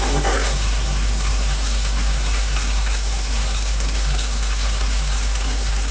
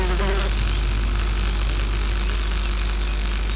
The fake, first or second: first